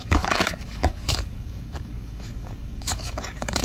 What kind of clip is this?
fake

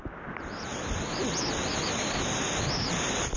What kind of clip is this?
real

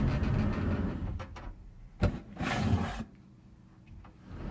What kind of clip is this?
real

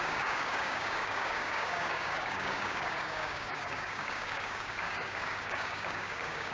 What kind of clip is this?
fake